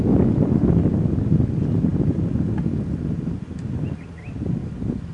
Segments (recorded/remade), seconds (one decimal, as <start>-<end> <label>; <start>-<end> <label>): 0.0-5.1 recorded